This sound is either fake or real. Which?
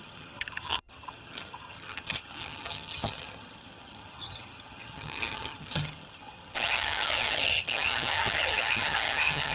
fake